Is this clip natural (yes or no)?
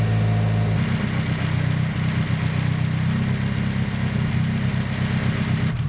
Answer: yes